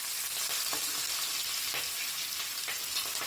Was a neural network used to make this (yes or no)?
no